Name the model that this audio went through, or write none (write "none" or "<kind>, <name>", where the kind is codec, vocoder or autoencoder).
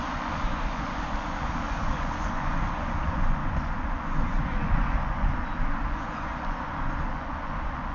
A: vocoder, Vocos